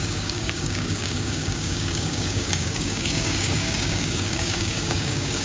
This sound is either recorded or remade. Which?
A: remade